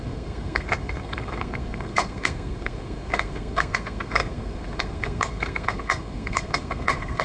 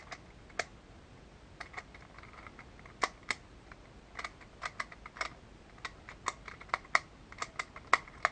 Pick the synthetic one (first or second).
first